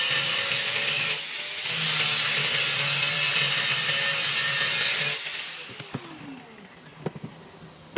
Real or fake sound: real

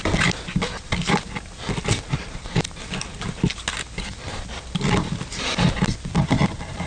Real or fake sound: real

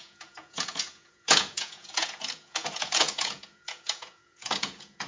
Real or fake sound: fake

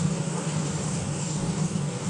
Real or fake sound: fake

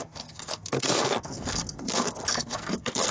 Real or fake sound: fake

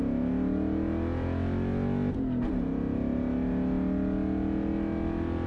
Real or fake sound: real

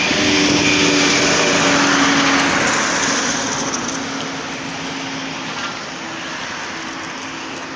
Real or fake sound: real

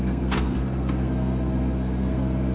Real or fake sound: fake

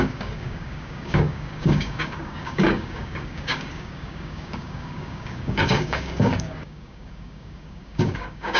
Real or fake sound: fake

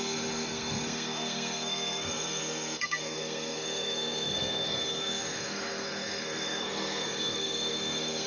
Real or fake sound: fake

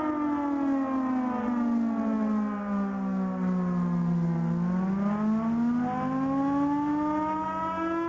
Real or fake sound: real